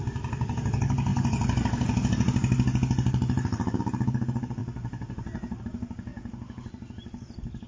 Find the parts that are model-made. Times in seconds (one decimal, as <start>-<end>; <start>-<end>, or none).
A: none